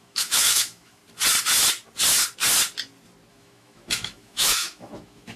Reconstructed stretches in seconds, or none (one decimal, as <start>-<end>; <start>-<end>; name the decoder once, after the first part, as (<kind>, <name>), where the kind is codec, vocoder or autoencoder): 0.0-1.0 (autoencoder, DAC-VAE); 3.3-5.4